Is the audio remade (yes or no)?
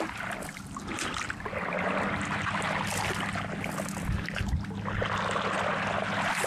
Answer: no